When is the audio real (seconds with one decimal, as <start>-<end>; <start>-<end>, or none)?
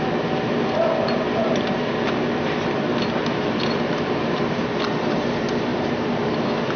none